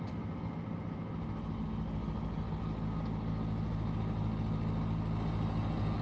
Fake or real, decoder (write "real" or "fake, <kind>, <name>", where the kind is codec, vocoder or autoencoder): real